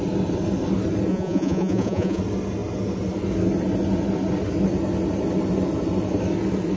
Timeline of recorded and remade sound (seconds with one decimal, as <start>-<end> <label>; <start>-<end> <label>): 0.0-1.1 recorded; 1.1-2.2 remade; 2.2-6.8 recorded